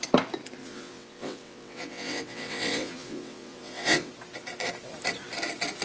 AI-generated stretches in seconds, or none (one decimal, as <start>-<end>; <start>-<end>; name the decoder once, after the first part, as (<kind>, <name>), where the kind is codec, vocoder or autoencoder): 0.6-4.1 (vocoder, WaveNeXt)